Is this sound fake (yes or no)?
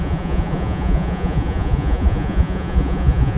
yes